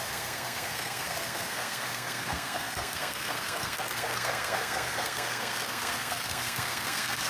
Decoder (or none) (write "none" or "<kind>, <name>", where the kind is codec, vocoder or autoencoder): codec, SNAC